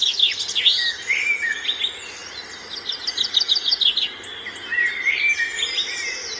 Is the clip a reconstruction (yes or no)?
no